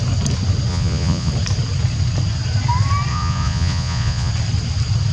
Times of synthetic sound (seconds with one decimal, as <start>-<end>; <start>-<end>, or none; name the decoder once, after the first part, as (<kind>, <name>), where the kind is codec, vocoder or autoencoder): 0.7-1.3 (vocoder, Vocos); 3.1-4.3